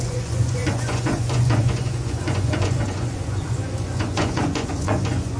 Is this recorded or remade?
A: remade